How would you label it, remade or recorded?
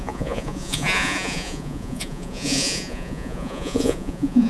remade